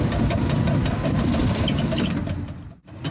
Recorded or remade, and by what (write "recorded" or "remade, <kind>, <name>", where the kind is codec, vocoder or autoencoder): recorded